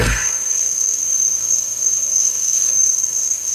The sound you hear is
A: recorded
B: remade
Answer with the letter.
B